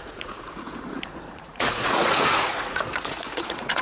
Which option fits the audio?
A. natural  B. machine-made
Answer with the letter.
B